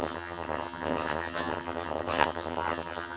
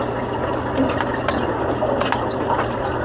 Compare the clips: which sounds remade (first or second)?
first